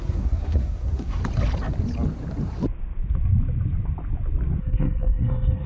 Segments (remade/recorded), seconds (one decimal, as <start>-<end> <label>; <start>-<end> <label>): 0.0-1.2 remade; 1.2-4.6 recorded; 4.6-5.7 remade